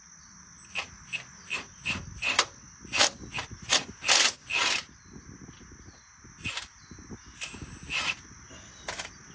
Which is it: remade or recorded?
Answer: recorded